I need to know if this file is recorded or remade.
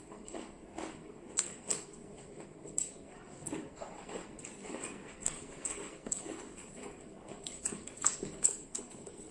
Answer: remade